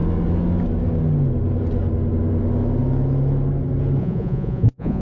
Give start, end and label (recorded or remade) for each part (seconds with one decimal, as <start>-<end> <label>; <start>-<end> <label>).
0.0-4.0 recorded; 4.0-5.0 remade